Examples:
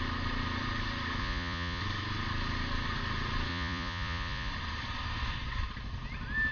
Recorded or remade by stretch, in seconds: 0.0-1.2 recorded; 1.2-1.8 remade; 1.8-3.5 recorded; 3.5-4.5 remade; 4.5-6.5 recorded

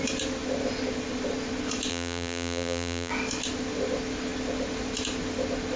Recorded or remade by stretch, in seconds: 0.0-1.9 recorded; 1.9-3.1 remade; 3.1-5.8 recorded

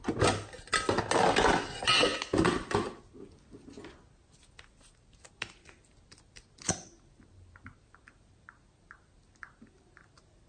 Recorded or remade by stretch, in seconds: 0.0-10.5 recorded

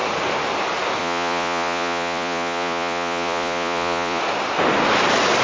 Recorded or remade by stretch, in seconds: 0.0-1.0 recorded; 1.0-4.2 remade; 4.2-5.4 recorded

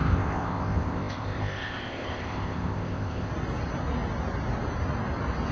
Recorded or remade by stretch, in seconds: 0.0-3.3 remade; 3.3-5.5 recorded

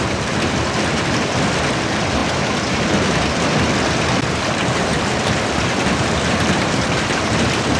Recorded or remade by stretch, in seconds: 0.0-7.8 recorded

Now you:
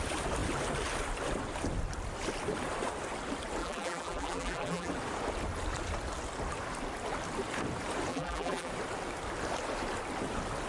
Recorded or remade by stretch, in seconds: 0.0-3.6 recorded; 3.6-4.9 remade; 4.9-8.1 recorded; 8.1-8.7 remade; 8.7-10.7 recorded

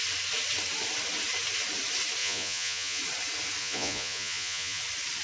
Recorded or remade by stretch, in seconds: 0.0-2.2 recorded; 2.2-3.0 remade; 3.0-3.6 recorded; 3.6-4.8 remade; 4.8-5.2 recorded